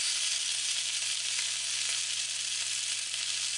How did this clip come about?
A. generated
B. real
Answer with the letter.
B